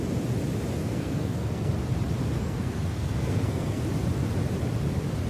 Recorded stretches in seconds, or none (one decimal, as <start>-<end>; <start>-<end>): 0.0-0.8; 1.7-2.4; 3.8-5.3